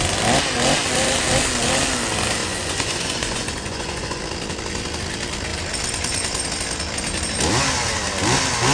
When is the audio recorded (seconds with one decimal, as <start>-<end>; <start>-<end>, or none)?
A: 0.0-2.4; 4.2-8.7